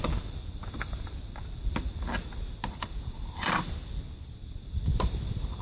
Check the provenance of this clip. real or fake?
real